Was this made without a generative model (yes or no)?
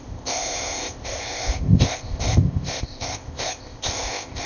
no